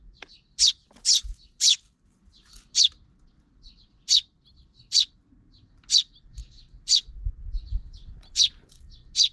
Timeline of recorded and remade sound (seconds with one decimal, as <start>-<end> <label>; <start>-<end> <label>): 0.0-9.3 recorded